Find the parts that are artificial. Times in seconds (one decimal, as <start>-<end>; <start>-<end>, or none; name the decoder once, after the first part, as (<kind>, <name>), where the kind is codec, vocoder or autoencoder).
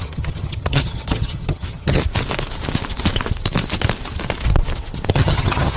0.0-2.0 (vocoder, HiFi-GAN); 5.1-5.8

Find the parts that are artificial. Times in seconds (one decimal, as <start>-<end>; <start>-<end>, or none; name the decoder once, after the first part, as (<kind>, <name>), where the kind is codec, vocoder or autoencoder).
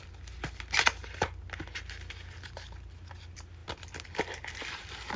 none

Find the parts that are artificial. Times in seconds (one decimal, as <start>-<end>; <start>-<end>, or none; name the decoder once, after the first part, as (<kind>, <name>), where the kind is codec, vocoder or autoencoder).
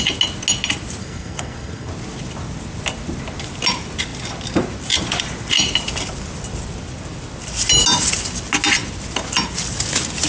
1.0-1.9 (codec, SNAC)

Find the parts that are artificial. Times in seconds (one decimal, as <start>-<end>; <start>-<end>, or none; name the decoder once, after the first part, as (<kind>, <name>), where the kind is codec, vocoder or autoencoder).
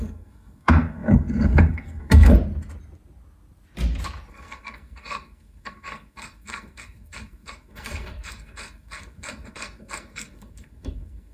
0.0-2.3 (codec, SNAC); 4.3-11.3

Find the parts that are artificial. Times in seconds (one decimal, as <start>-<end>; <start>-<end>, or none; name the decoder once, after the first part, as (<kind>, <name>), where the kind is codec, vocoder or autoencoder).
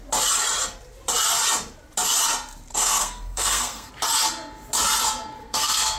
2.7-3.9 (codec, SNAC); 5.4-6.0